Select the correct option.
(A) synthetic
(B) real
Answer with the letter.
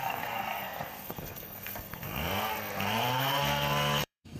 A